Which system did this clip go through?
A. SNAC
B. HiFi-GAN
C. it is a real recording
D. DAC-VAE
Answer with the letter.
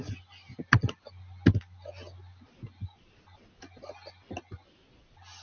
C